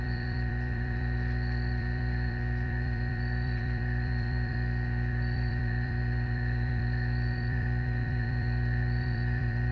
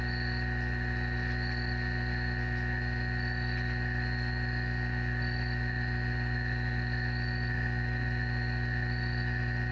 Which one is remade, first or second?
first